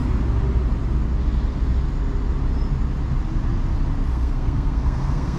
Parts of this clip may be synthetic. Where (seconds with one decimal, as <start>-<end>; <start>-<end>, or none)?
4.1-5.4